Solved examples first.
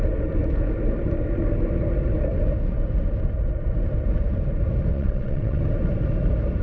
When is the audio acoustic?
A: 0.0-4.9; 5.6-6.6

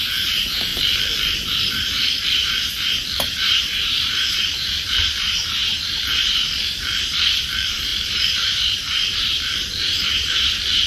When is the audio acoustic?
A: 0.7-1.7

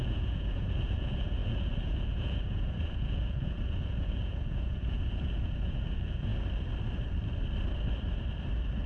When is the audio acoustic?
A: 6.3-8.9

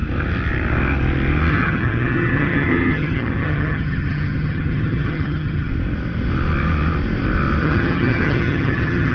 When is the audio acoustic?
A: 0.0-1.5; 5.7-7.6

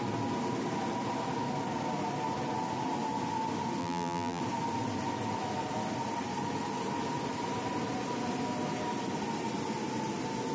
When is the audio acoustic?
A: 0.0-3.8; 4.4-10.5

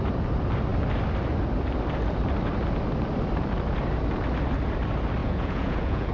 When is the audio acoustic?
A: 0.0-5.2

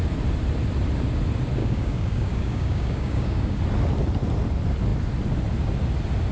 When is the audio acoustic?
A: 0.0-1.6; 3.6-6.3